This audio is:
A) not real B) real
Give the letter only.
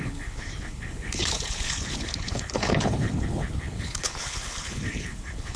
A